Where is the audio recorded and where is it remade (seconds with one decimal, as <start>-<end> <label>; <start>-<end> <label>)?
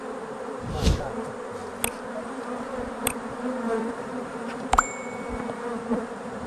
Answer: 0.0-1.6 remade; 1.6-2.2 recorded; 2.2-6.5 remade